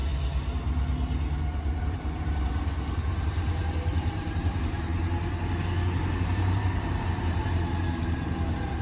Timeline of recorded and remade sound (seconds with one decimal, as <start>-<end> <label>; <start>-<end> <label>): 0.0-1.8 recorded; 1.8-4.9 remade; 4.9-6.1 recorded; 6.1-8.8 remade